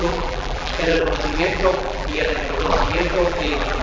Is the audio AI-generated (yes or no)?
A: yes